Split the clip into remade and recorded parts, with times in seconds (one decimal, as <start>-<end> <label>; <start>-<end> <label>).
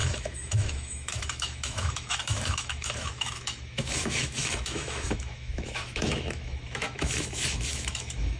0.0-8.4 remade